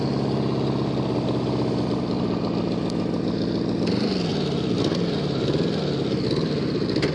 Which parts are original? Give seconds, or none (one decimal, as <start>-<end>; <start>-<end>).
0.0-7.1